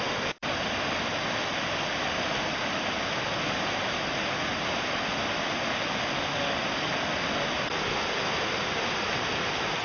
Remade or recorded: recorded